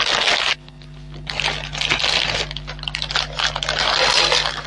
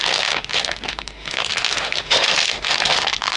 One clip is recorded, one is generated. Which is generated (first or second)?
second